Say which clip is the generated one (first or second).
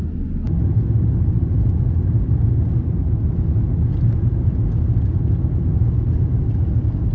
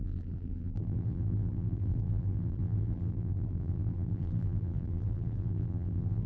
second